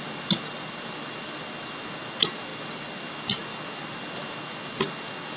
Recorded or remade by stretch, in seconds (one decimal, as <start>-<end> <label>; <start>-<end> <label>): 0.0-5.4 recorded